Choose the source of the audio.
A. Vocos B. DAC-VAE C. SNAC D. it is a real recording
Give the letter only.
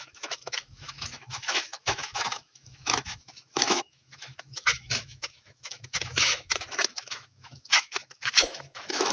B